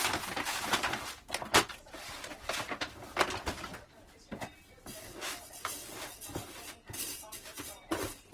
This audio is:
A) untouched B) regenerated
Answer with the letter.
A